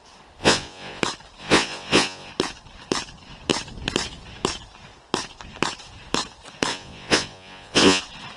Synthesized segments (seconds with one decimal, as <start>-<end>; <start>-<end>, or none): 0.4-1.0; 1.4-2.3; 6.7-8.0